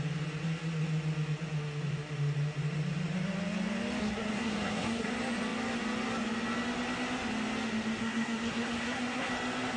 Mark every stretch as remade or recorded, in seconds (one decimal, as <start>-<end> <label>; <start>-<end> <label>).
0.0-4.0 recorded; 4.0-5.1 remade; 5.1-8.0 recorded; 8.0-9.3 remade; 9.3-9.8 recorded